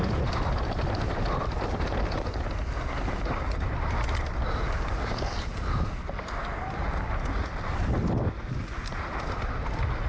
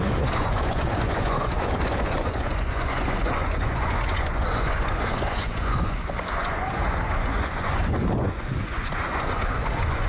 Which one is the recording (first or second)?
first